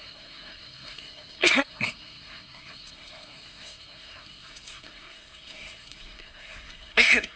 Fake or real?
fake